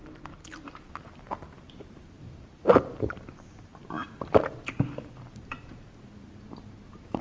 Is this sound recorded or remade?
remade